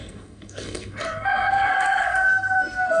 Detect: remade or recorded remade